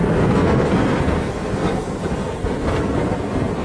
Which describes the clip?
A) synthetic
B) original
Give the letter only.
A